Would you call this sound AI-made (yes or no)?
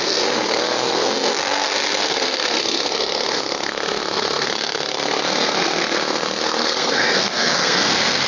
yes